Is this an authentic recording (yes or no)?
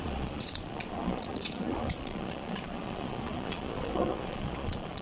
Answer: no